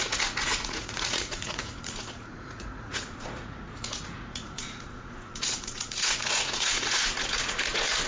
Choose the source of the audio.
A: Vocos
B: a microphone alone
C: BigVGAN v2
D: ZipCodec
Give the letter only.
A